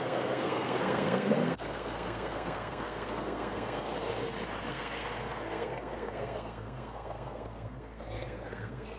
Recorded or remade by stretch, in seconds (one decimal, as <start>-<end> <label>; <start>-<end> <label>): 0.0-3.9 remade; 3.9-4.7 recorded; 4.7-9.0 remade